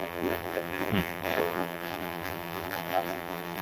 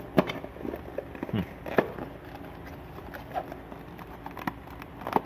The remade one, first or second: first